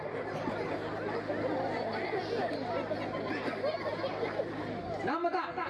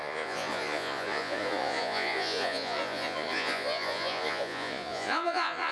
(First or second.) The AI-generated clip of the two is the second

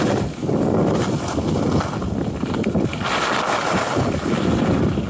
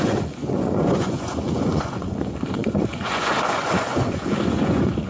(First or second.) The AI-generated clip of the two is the second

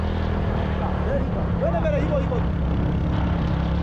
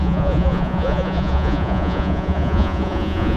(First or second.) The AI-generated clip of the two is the second